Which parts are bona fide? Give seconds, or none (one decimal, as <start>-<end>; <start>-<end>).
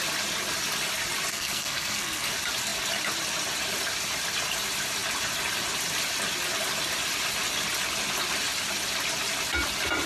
0.0-1.3; 2.3-10.1